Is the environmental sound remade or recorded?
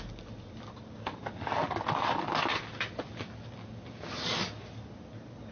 recorded